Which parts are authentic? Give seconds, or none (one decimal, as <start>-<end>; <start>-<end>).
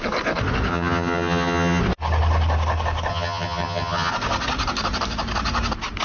0.0-0.7; 1.8-3.1; 4.1-6.0